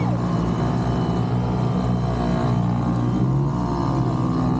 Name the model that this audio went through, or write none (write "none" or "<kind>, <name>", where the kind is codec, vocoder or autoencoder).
none